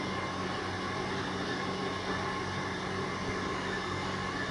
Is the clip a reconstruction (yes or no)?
no